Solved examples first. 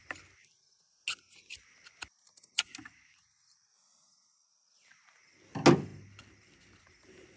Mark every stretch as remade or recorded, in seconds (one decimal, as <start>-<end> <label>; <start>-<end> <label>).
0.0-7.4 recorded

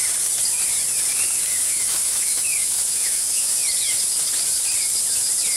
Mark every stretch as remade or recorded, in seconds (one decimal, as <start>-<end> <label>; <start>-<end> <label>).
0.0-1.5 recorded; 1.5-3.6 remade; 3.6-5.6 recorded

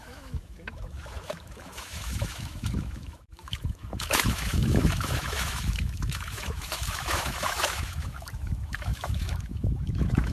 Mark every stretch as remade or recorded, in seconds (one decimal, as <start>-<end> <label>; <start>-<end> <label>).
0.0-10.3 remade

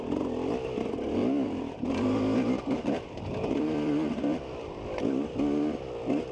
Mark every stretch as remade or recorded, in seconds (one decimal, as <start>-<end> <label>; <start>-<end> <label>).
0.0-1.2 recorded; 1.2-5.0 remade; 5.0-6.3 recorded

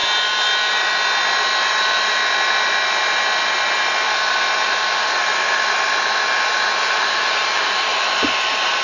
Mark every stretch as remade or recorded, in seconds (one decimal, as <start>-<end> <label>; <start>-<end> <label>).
0.0-1.8 recorded; 1.8-2.2 remade; 2.2-6.8 recorded; 6.8-8.8 remade

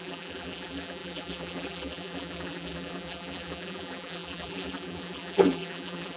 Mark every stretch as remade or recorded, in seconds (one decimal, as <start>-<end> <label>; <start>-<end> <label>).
0.0-6.2 remade

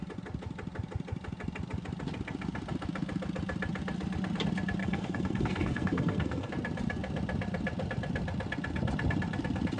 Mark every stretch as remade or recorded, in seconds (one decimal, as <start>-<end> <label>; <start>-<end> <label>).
0.0-4.8 recorded; 4.8-6.5 remade; 6.5-9.8 recorded